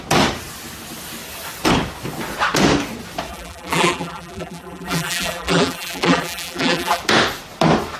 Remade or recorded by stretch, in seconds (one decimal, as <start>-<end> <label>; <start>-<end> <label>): 0.0-3.3 recorded; 3.3-7.0 remade; 7.0-8.0 recorded